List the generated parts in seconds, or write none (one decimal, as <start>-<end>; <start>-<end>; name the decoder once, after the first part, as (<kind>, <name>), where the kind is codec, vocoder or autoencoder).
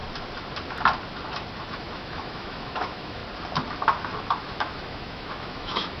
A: 1.6-3.2 (autoencoder, DAC-VAE); 4.4-6.0